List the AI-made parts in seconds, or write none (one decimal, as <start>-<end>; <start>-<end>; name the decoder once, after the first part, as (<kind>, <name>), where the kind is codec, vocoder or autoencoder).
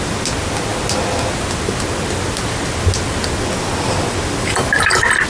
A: none